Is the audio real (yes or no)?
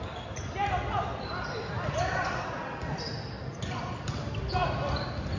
yes